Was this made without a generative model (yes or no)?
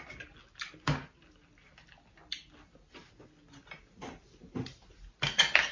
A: yes